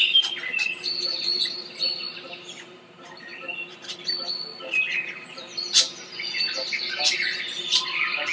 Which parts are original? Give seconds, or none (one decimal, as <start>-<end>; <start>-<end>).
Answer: 0.0-8.3